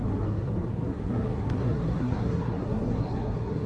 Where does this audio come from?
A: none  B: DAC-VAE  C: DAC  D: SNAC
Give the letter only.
D